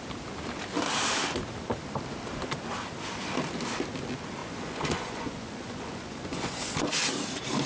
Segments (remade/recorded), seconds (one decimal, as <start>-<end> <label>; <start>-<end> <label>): 0.0-4.4 recorded; 4.4-6.7 remade; 6.7-7.7 recorded

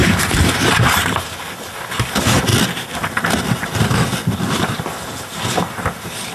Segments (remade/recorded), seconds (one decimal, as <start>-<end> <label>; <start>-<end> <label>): 0.0-1.2 remade; 1.2-6.3 recorded